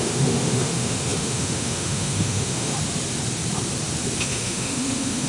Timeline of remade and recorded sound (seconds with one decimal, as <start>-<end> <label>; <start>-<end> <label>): 0.0-2.7 remade; 2.7-4.2 recorded; 4.2-5.3 remade